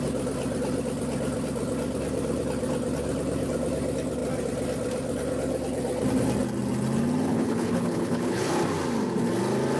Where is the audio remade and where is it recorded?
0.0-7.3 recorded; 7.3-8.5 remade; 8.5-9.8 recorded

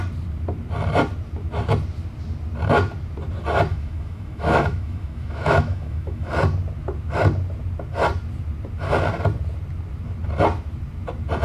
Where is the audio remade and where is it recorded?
0.0-3.7 recorded; 3.7-6.3 remade; 6.3-11.4 recorded